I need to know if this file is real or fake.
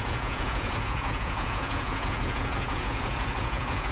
fake